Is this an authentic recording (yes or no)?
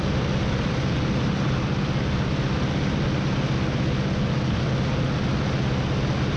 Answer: yes